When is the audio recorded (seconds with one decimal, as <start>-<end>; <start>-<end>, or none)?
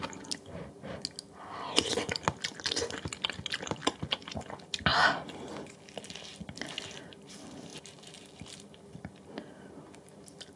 0.0-3.8; 4.5-7.7; 8.4-10.6